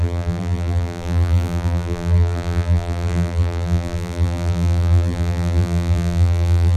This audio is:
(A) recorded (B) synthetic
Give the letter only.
B